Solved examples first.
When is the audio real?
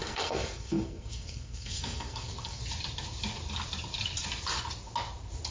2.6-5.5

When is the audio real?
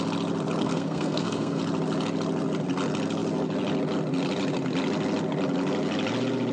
0.0-0.6; 1.6-6.5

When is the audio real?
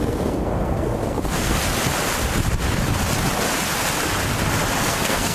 1.6-4.8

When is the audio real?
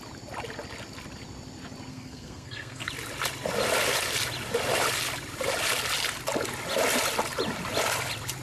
0.0-1.9; 2.9-8.4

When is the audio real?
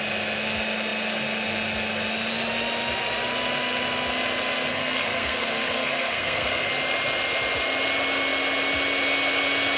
0.0-4.7; 6.7-9.8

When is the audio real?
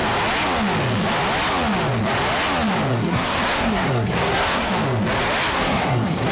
0.0-2.9; 4.7-5.5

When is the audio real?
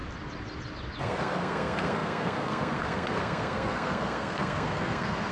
0.0-1.0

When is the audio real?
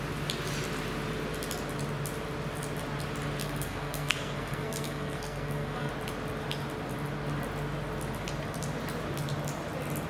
0.0-3.4; 5.9-10.1